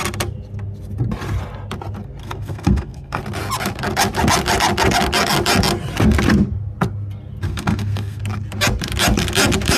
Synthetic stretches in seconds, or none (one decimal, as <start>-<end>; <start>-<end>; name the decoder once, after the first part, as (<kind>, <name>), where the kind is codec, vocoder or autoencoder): 2.2-3.2 (codec, SNAC); 7.4-8.2

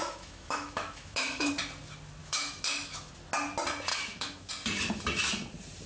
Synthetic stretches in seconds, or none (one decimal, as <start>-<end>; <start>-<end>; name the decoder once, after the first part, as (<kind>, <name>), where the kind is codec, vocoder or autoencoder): 0.0-1.5 (autoencoder, DAC-VAE); 2.2-3.1; 3.9-4.5

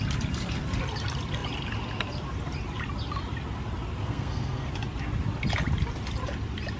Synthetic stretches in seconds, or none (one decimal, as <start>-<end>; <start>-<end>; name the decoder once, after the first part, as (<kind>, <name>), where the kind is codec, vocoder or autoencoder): 4.0-4.7 (codec, SNAC)

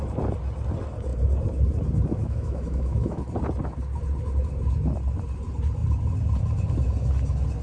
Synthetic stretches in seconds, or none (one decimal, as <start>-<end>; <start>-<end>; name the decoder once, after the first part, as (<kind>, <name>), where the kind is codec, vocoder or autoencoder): 2.2-3.2 (autoencoder, DAC-VAE)

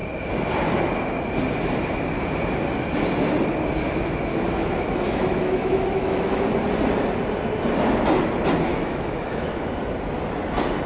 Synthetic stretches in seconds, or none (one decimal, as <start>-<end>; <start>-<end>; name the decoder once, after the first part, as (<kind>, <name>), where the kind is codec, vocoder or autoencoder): 4.3-6.4 (autoencoder, DAC-VAE); 8.7-9.7

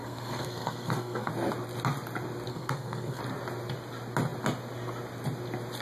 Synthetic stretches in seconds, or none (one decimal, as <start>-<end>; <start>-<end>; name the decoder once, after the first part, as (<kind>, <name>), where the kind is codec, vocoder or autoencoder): 0.0-1.3 (codec, SNAC); 2.5-3.2

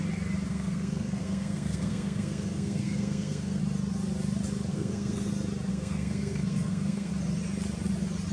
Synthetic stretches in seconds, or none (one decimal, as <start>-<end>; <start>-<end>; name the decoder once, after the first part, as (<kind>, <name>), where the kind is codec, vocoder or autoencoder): 0.5-3.6 (codec, SNAC); 4.7-5.3; 5.7-7.1